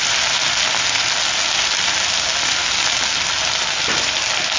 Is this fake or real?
real